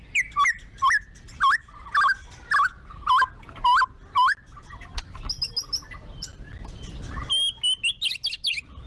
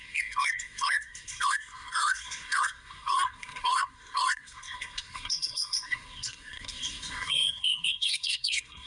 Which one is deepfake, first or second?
second